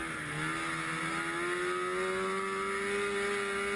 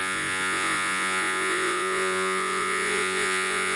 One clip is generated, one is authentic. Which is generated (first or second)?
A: second